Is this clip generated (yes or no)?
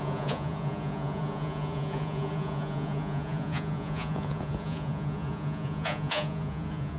yes